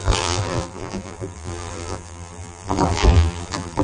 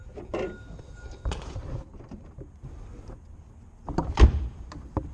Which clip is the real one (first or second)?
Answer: second